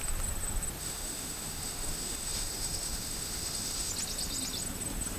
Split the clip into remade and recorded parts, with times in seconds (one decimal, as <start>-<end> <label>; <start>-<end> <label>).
0.0-0.8 recorded; 0.8-3.9 remade; 3.9-5.2 recorded